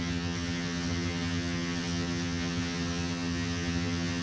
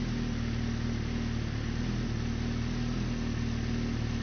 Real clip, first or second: second